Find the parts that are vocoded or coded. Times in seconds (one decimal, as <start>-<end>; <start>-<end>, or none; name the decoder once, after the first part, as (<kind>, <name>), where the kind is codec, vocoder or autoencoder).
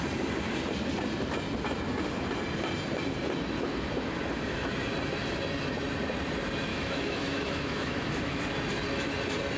6.7-8.4 (autoencoder, DAC-VAE)